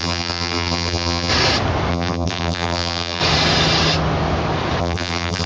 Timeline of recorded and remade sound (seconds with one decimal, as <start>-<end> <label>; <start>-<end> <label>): 0.0-1.3 remade; 1.3-1.9 recorded; 1.9-3.2 remade; 3.2-4.8 recorded; 4.8-5.5 remade